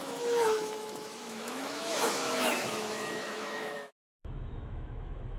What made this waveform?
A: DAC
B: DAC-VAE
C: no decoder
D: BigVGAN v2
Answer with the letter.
B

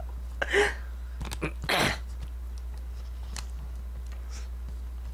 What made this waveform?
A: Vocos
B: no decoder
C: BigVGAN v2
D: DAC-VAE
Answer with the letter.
B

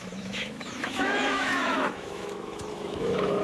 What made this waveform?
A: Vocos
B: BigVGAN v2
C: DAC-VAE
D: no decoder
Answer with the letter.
C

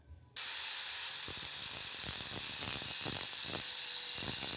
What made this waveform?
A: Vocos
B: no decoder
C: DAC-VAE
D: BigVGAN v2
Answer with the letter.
B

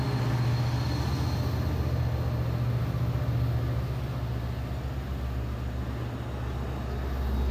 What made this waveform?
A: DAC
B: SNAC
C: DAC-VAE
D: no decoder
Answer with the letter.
D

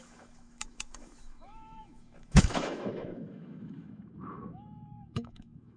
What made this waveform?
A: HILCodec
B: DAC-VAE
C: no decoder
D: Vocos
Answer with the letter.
B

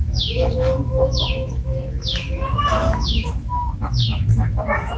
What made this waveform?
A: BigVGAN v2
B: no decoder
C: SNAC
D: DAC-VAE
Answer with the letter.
D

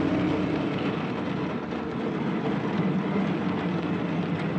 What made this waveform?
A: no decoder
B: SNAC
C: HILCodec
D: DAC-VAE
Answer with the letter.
A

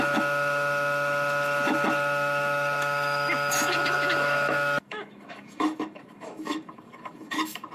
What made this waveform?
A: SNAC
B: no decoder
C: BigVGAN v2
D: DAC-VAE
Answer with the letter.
D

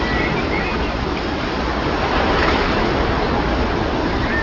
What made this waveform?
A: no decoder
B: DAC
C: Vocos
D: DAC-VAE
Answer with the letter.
A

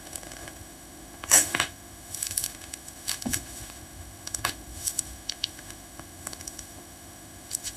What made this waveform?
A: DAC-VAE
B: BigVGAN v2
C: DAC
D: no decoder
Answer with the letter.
A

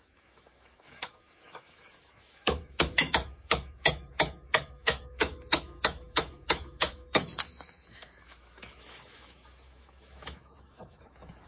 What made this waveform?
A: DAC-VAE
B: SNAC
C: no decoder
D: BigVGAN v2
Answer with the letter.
A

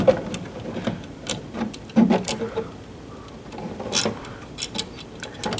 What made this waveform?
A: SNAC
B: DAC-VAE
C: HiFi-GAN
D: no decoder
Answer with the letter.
D